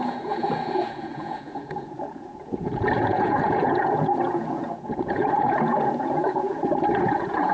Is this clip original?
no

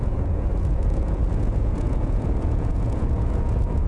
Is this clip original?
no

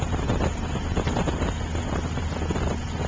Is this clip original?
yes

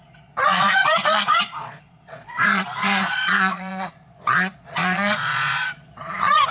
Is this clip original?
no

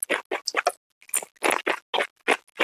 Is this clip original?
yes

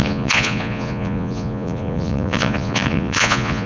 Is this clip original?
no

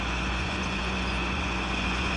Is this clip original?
no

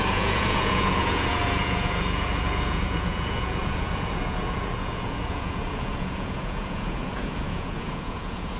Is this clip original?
no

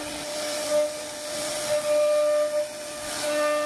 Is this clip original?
yes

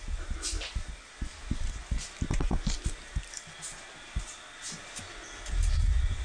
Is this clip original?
yes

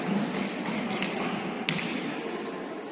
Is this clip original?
yes